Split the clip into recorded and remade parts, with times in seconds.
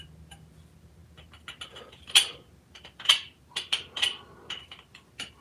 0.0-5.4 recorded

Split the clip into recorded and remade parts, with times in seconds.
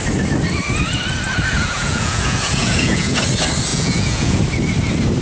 0.0-1.5 recorded; 1.5-3.2 remade; 3.2-3.7 recorded; 3.7-4.4 remade; 4.4-5.2 recorded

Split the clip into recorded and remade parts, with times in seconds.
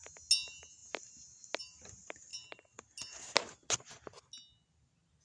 0.0-5.2 recorded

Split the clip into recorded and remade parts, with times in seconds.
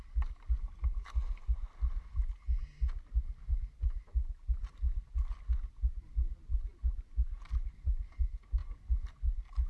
0.0-9.7 recorded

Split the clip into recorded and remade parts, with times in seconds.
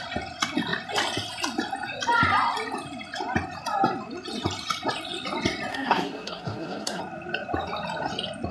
0.0-5.7 recorded; 5.7-7.0 remade; 7.0-8.5 recorded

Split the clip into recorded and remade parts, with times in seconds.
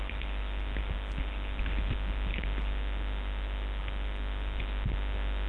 0.0-5.5 recorded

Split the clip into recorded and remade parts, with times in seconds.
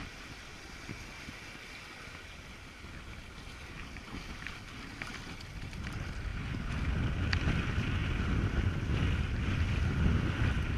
0.0-10.8 recorded